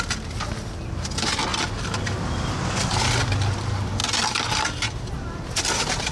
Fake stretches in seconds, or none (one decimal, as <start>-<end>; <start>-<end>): none